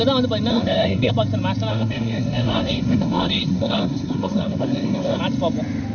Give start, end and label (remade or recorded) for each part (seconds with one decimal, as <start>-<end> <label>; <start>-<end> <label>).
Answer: 0.0-0.5 recorded; 0.5-1.1 remade; 1.1-1.7 recorded; 1.7-5.2 remade; 5.2-5.9 recorded

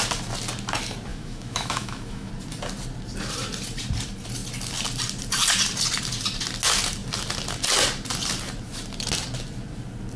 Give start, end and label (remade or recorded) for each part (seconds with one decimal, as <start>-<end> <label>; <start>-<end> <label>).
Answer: 0.0-1.1 recorded; 1.1-2.3 remade; 2.3-10.2 recorded

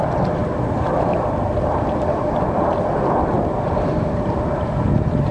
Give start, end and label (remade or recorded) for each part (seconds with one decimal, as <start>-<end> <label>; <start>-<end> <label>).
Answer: 0.0-0.4 remade; 0.4-3.6 recorded; 3.6-5.3 remade

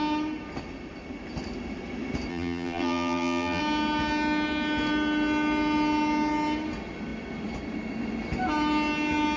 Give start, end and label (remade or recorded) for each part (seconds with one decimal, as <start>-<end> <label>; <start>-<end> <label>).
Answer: 0.0-2.3 recorded; 2.3-3.6 remade; 3.6-9.4 recorded